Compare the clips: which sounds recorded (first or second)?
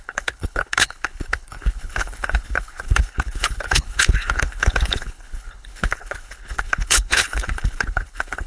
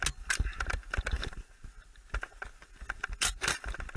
second